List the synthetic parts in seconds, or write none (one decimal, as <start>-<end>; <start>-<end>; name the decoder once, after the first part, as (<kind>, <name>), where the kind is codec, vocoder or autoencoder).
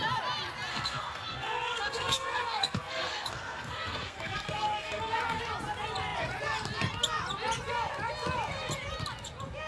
0.7-5.4 (codec, SNAC)